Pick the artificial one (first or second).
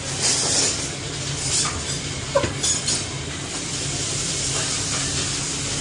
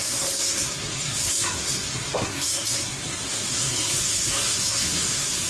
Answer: second